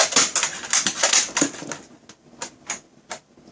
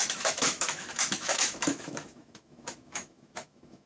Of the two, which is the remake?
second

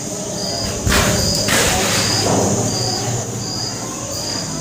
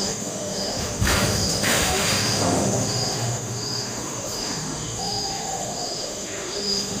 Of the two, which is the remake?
second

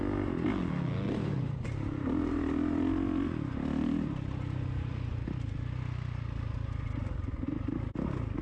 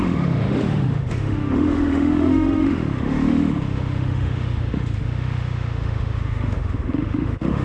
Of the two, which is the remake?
second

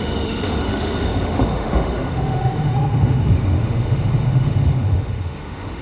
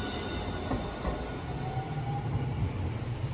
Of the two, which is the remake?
first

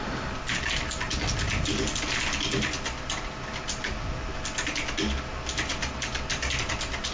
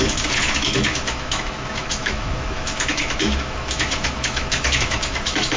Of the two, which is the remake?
second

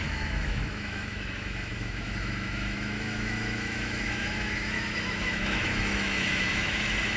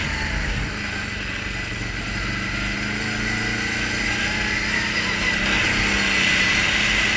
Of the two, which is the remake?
first